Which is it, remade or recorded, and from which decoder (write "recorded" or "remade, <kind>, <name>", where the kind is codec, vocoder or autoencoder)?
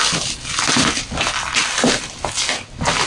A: recorded